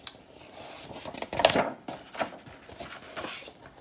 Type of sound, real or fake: real